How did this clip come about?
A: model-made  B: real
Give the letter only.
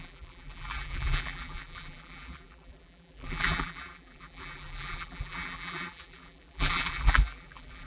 A